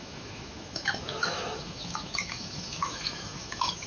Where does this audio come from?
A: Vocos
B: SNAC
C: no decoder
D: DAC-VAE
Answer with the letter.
D